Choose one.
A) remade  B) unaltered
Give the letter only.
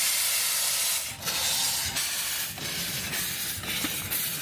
B